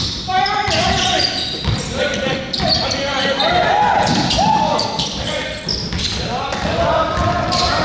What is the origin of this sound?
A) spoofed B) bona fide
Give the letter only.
B